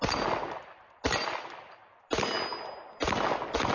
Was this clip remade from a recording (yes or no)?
no